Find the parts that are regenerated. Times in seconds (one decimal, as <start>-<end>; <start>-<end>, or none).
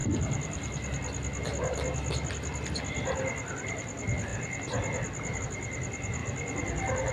none